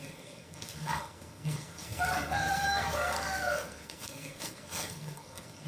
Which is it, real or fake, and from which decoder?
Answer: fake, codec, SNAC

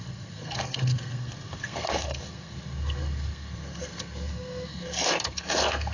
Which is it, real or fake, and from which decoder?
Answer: fake, codec, SNAC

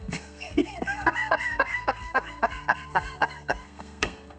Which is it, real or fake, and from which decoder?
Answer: fake, codec, SNAC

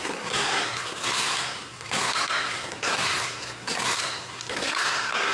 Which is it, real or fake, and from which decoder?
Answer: fake, codec, SNAC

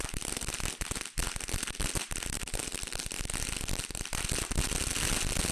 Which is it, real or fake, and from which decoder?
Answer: real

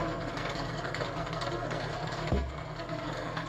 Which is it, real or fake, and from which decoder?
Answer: fake, codec, SNAC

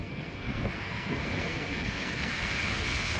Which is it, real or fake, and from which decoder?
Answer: fake, codec, SNAC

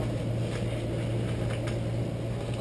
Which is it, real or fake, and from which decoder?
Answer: real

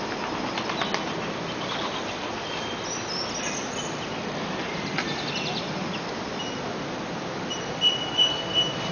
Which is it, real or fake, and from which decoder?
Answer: real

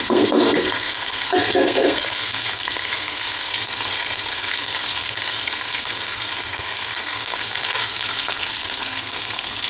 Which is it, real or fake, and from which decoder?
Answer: fake, codec, SNAC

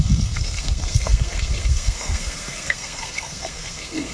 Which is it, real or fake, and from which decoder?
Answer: fake, codec, SNAC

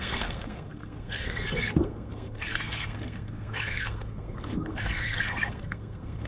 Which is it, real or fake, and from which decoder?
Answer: fake, codec, SNAC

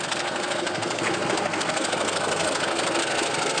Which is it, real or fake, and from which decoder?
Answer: fake, codec, SNAC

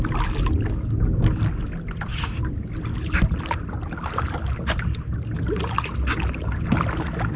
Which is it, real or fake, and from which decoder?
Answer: real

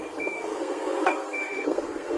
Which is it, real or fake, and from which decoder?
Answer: fake, codec, SNAC